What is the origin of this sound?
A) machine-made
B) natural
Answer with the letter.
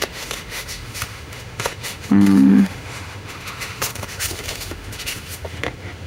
A